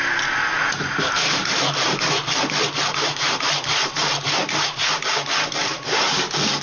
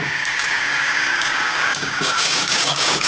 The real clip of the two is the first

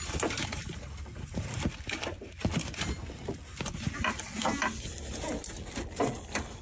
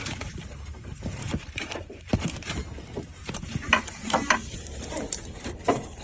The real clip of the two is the first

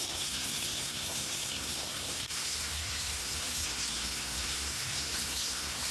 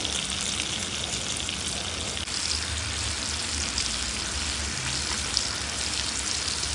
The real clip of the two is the second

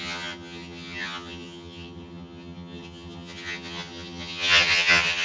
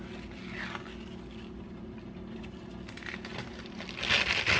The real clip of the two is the second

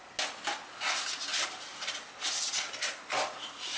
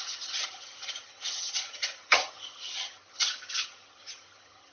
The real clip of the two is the first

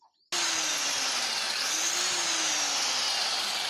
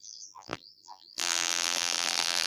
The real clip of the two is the first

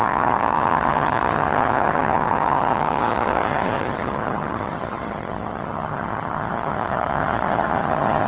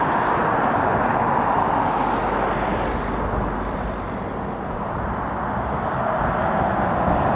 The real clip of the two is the second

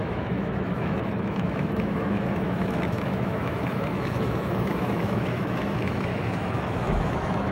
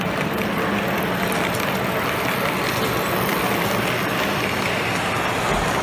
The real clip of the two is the second